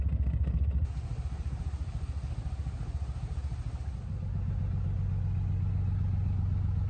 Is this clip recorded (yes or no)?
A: yes